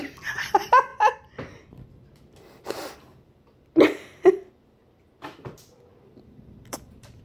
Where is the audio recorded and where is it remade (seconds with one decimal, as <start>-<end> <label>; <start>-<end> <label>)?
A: 0.0-5.9 recorded; 5.9-7.2 remade